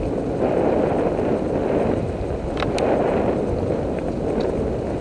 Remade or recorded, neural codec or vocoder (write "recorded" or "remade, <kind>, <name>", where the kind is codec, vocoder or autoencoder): recorded